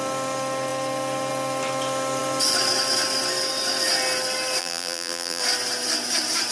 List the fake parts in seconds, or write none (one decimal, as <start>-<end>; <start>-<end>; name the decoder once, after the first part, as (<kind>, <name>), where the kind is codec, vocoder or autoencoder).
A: 4.6-5.4 (vocoder, BigVGAN v2)